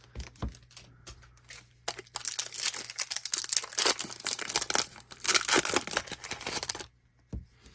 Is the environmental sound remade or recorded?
recorded